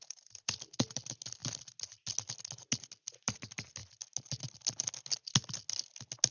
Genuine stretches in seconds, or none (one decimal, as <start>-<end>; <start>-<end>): 0.0-6.3